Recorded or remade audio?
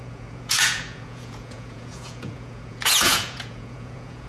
remade